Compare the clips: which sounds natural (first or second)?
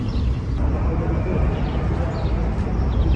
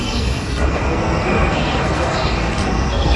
first